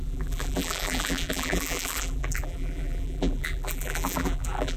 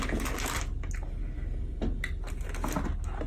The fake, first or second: first